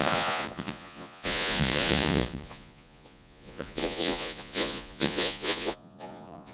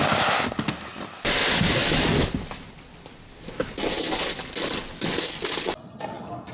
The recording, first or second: second